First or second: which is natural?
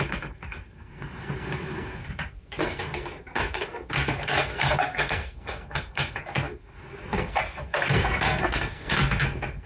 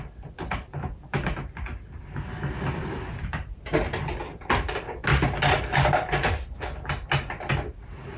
second